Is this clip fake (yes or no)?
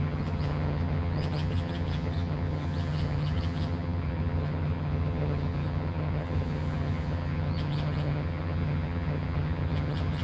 yes